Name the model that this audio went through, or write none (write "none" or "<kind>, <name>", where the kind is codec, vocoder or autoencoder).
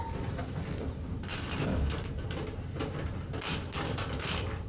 none